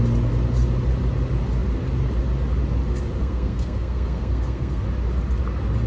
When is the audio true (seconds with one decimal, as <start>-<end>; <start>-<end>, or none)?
0.0-3.2; 4.8-5.9

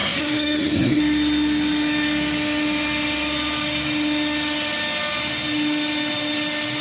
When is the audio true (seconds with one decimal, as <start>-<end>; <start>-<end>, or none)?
1.0-6.8

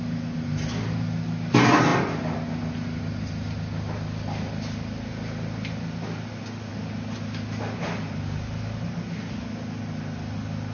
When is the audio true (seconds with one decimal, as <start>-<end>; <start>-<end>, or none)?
0.0-10.7

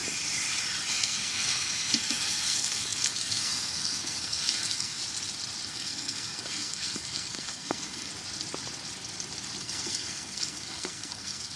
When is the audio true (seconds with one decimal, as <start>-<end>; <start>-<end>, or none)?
0.0-0.9; 5.0-5.7; 8.1-9.6

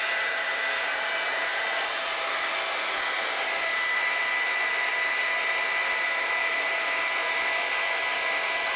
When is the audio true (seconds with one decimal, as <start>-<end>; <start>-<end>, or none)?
0.0-8.8

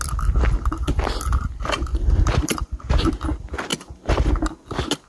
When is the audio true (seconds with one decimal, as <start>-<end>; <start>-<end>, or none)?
0.0-1.9; 2.7-3.7; 4.3-5.1